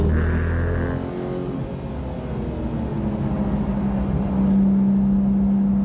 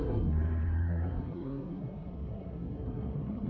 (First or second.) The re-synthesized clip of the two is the second